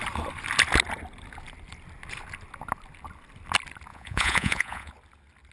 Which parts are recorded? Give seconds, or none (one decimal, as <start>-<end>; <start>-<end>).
0.0-3.9; 4.9-5.5